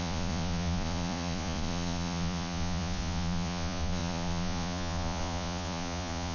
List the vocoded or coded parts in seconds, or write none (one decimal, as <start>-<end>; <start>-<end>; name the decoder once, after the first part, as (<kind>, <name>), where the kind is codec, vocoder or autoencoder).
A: 0.0-6.3 (vocoder, Vocos)